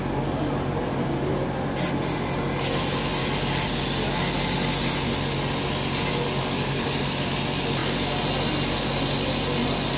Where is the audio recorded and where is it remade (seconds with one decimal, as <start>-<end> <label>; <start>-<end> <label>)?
0.0-10.0 recorded